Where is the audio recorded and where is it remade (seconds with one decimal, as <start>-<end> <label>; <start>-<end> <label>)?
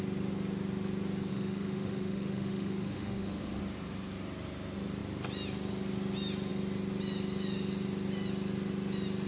0.0-1.3 recorded; 1.3-3.6 remade; 3.6-9.3 recorded